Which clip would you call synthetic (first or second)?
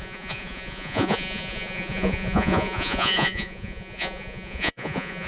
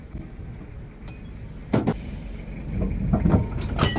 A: first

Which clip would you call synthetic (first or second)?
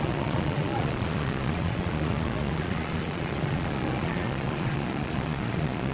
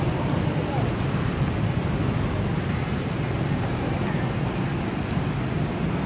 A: first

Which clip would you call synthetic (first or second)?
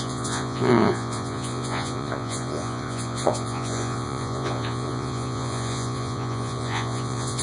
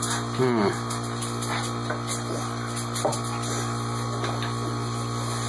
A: first